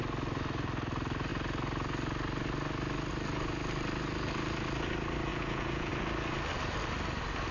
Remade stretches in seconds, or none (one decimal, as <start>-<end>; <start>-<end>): 5.3-5.9